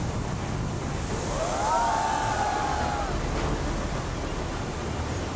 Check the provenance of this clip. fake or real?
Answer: real